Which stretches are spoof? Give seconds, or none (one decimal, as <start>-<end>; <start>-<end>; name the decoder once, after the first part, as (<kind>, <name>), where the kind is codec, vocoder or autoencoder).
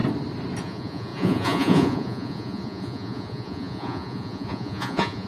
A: 0.6-5.3 (vocoder, Vocos)